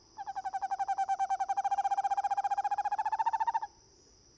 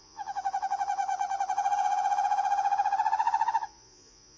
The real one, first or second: first